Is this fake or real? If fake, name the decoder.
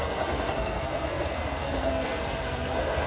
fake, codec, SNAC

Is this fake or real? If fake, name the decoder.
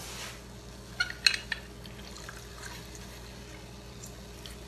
real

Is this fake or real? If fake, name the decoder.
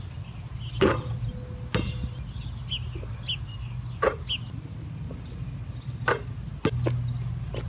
real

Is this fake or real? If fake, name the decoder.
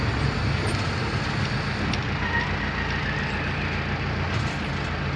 real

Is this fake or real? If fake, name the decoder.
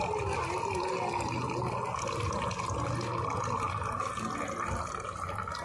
real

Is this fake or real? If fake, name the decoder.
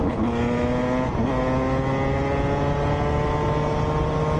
real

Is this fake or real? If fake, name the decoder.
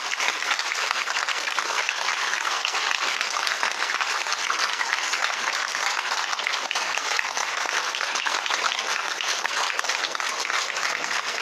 fake, codec, SNAC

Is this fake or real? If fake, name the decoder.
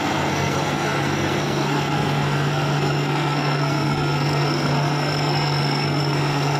fake, codec, SNAC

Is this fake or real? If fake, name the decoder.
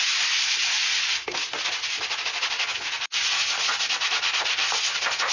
real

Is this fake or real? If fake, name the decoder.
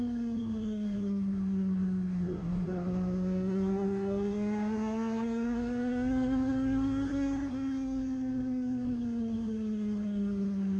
fake, codec, SNAC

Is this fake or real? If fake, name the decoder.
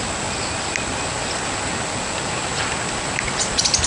real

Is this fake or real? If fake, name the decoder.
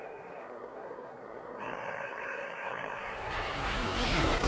fake, codec, SNAC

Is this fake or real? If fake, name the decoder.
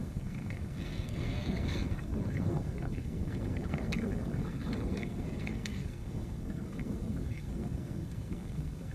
fake, codec, SNAC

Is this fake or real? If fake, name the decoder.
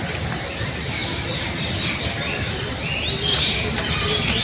real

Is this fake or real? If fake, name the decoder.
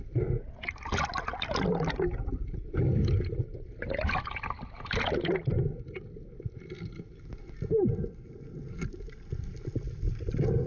real